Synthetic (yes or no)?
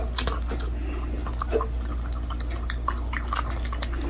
no